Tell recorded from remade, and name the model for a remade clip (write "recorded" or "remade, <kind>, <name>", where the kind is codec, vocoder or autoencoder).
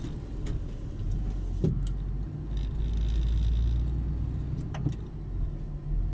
recorded